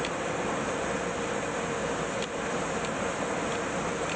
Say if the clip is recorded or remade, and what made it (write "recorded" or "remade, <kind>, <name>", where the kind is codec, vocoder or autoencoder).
recorded